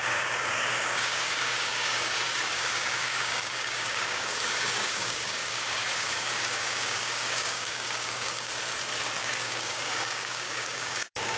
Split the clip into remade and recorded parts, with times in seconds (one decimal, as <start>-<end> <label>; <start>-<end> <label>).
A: 0.0-8.5 remade; 8.5-9.2 recorded; 9.2-11.4 remade